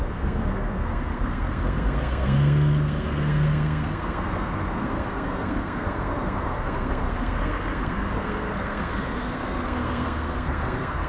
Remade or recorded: remade